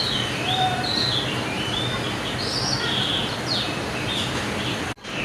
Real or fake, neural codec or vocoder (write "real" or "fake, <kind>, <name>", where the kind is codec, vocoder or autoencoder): real